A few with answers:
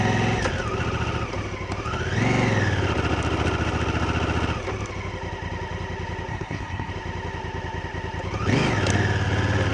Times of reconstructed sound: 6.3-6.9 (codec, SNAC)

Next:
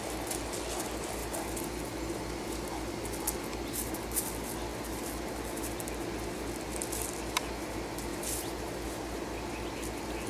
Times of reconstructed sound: none